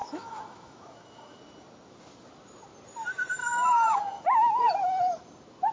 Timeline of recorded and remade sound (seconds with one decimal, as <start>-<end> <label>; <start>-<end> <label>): 0.0-1.4 remade; 1.4-3.4 recorded; 3.4-4.5 remade; 4.5-5.7 recorded